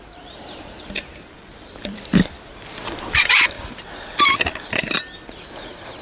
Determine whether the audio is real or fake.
fake